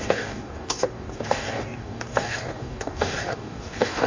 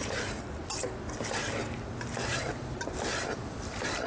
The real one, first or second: second